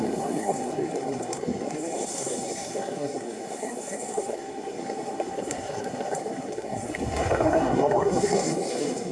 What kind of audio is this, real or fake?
fake